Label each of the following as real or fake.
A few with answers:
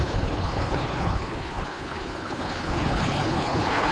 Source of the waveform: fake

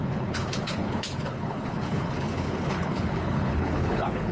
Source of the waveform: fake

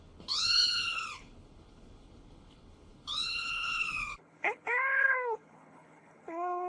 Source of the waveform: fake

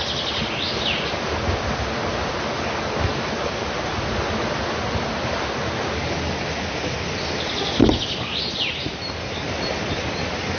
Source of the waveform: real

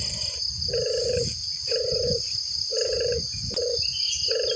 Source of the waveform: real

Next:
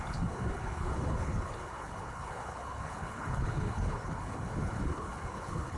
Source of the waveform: fake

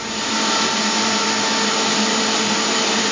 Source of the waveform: real